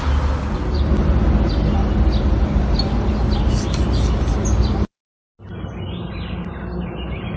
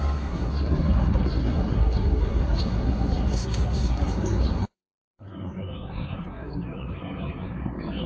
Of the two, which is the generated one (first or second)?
second